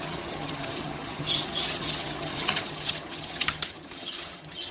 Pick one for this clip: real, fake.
fake